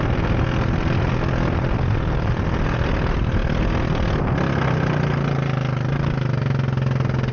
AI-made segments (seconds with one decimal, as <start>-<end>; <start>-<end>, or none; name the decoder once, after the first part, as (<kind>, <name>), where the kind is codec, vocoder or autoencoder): none